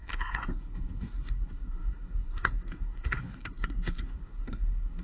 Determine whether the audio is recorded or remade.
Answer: remade